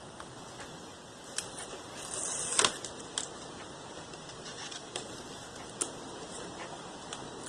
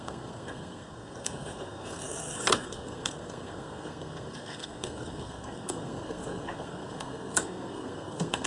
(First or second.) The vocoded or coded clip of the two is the second